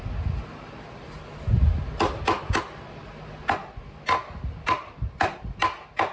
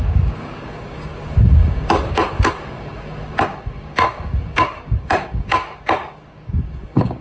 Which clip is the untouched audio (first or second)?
first